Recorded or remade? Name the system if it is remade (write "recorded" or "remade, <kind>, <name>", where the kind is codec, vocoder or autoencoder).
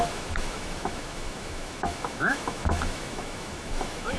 remade, autoencoder, DAC-VAE